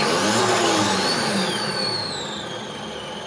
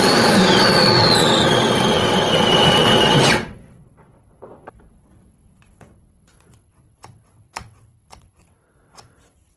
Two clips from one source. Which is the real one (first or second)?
first